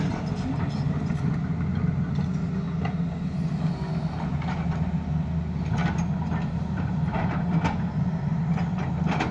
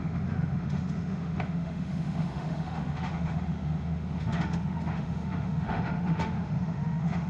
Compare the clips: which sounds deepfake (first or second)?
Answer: second